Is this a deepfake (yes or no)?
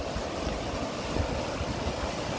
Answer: no